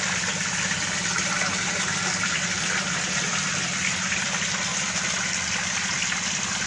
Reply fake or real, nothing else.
fake